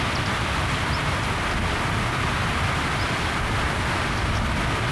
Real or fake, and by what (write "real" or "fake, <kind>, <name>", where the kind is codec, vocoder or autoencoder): real